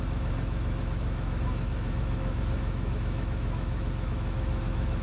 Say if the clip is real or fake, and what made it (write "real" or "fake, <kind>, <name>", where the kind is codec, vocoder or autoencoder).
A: fake, autoencoder, DAC-VAE